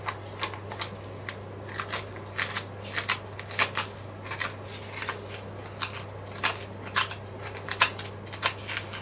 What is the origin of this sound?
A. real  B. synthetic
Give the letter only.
A